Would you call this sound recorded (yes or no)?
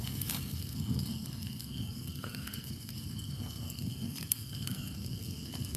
no